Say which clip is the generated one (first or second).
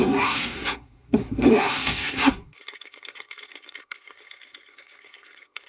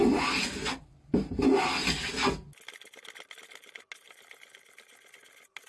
first